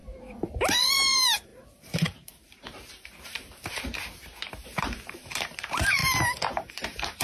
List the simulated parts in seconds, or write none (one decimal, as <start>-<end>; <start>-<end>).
0.0-6.0; 6.7-7.2

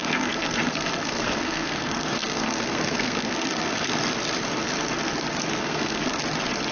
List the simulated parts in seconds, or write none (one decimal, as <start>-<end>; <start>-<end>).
0.0-4.0; 5.6-6.2

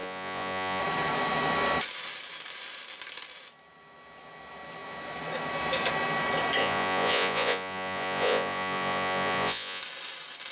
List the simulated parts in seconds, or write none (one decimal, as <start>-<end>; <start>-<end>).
0.0-0.8; 6.6-9.8

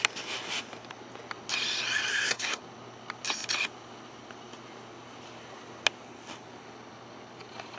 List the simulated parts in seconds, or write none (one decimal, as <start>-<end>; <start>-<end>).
2.1-2.6

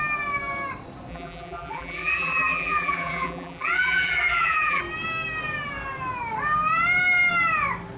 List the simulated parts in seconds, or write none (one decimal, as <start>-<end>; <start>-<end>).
1.1-4.8

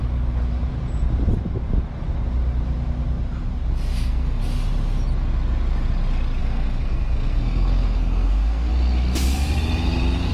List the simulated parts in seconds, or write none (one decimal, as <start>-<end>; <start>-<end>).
3.9-4.4; 6.4-8.7

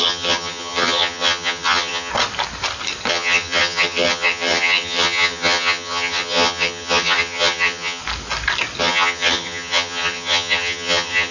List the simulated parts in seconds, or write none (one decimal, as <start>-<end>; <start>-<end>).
0.0-2.1; 3.1-8.0; 8.8-11.3

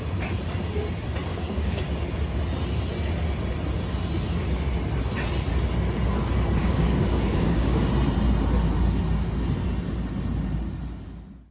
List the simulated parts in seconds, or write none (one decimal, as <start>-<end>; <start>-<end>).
1.3-1.8; 6.6-7.9